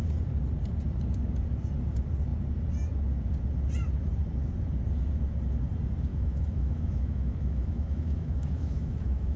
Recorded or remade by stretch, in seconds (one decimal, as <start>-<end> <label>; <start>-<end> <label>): 0.0-6.1 recorded; 6.1-9.4 remade